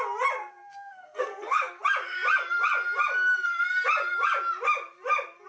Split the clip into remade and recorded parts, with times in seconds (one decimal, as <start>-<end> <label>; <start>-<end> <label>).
0.0-0.4 recorded; 0.4-1.8 remade; 1.8-5.5 recorded